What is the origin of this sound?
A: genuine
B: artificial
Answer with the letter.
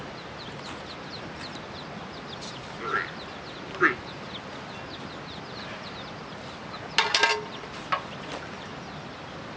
A